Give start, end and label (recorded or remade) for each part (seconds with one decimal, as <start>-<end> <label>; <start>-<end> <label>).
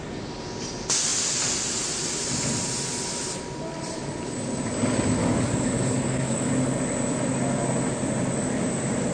0.0-5.2 recorded; 5.2-6.5 remade; 6.5-9.1 recorded